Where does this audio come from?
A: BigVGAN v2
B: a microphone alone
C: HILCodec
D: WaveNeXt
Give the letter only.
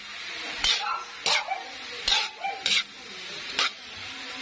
B